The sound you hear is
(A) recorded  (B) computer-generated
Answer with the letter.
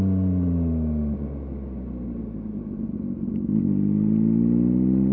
A